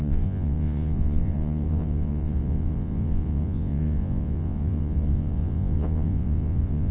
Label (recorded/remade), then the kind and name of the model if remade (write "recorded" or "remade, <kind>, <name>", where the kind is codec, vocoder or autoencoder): remade, vocoder, Vocos